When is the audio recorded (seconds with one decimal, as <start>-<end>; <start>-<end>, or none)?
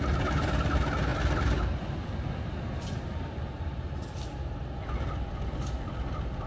0.0-6.5